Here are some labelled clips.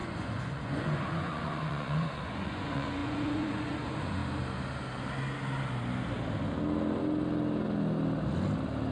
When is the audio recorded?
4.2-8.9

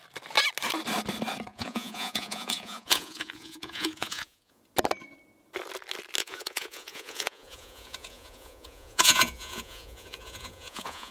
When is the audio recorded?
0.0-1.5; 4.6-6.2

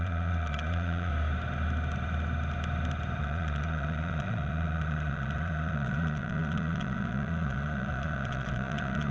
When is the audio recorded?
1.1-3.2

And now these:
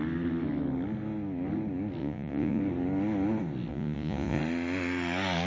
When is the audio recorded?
0.0-2.0; 2.6-3.7; 4.4-5.5

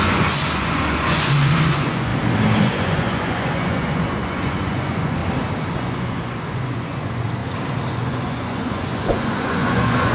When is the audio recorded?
2.1-2.6; 5.2-5.7; 7.4-7.9

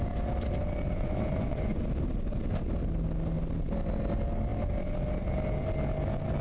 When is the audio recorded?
0.0-0.9; 1.8-6.4

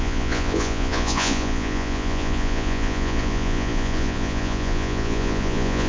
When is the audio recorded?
none